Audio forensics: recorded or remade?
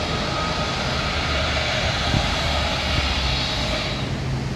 recorded